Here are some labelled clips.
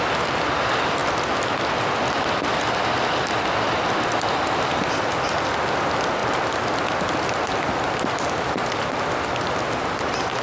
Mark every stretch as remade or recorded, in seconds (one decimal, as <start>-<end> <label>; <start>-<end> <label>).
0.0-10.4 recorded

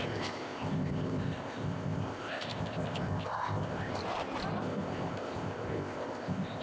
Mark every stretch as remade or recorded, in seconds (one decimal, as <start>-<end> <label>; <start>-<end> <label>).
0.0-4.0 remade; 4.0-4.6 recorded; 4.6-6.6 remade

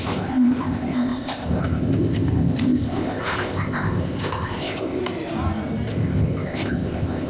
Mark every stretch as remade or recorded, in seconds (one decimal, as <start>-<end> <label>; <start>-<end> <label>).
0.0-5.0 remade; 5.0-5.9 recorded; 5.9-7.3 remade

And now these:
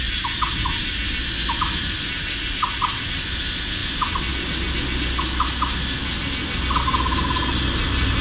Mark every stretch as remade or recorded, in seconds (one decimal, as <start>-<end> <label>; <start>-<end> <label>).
0.0-8.2 recorded

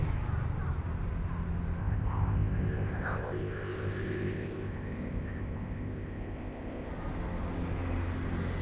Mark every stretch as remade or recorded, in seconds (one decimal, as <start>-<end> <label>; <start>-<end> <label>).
0.0-1.8 recorded; 1.8-6.9 remade; 6.9-8.6 recorded